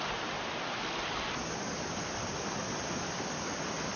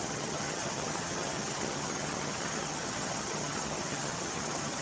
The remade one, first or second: second